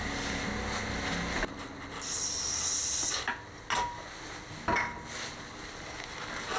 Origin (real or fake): real